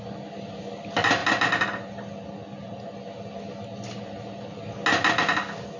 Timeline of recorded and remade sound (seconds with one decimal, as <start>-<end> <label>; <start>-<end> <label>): 0.0-5.8 recorded